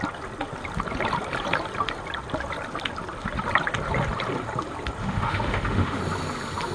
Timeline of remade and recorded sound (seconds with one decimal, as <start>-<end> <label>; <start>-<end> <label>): 0.0-5.0 recorded; 5.0-6.0 remade; 6.0-6.7 recorded